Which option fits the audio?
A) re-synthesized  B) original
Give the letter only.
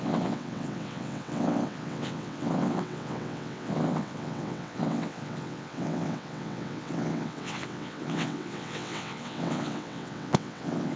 A